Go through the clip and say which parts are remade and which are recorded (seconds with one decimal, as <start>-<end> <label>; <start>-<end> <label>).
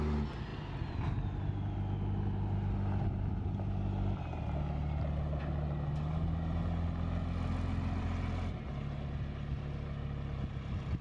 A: 0.0-11.0 recorded